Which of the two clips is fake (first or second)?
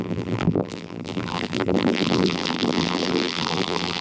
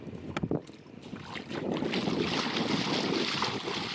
first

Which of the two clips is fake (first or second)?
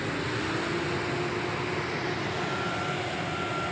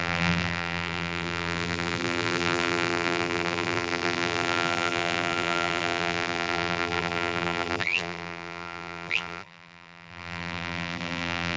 second